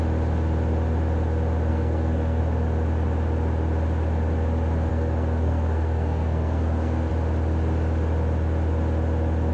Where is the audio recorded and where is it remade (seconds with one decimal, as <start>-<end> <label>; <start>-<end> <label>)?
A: 0.0-1.7 recorded; 1.7-2.4 remade; 2.4-4.9 recorded; 4.9-7.1 remade; 7.1-9.5 recorded